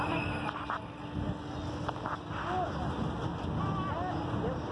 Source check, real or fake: real